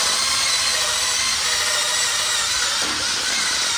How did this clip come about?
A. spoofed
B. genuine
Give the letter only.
B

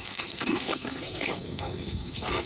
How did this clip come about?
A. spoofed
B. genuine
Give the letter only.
A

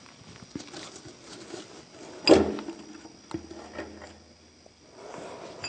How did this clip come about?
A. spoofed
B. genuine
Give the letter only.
B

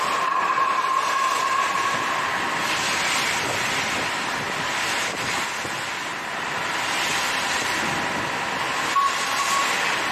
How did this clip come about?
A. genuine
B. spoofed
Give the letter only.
A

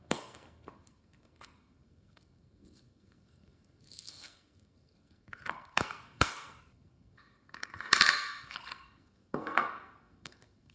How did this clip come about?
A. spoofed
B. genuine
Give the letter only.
A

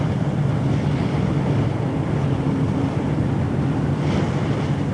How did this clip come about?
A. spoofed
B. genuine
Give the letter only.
B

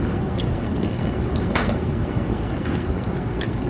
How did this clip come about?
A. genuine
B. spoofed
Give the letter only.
B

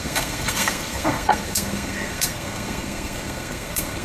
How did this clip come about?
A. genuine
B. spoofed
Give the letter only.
B